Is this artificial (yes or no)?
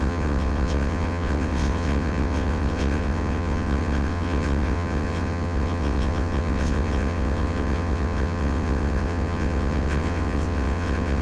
yes